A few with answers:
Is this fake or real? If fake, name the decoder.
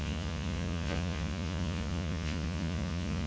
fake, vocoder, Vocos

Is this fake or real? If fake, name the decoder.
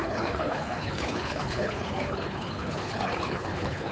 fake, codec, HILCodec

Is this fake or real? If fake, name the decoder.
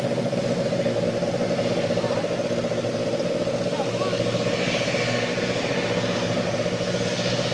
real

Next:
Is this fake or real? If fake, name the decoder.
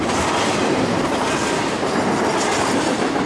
real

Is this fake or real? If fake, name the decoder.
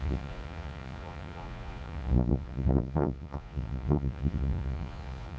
fake, vocoder, Vocos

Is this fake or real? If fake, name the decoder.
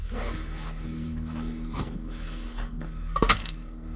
fake, codec, SNAC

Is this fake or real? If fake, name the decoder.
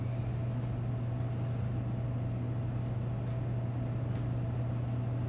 real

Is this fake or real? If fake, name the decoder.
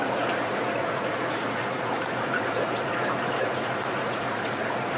fake, vocoder, Vocos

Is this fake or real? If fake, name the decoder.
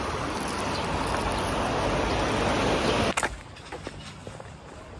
real